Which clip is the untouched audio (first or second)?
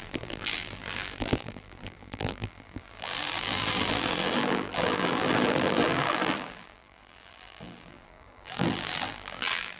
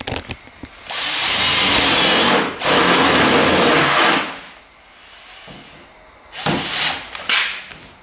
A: second